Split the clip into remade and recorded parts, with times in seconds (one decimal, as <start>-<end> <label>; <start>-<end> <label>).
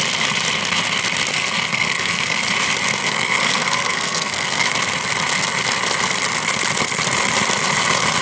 0.0-1.3 recorded; 1.3-2.4 remade; 2.4-3.0 recorded; 3.0-4.7 remade; 4.7-8.2 recorded